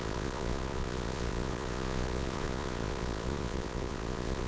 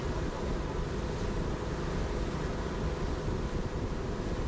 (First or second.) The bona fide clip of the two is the second